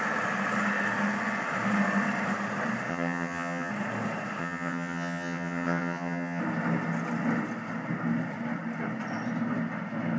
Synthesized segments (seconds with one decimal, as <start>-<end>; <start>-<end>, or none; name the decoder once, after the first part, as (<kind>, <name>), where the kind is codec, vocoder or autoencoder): 2.9-3.7 (vocoder, HiFi-GAN); 4.4-6.4